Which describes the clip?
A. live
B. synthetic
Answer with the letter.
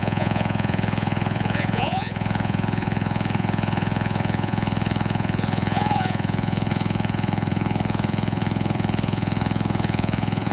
B